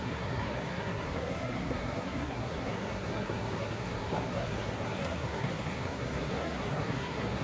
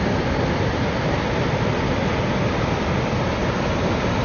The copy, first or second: first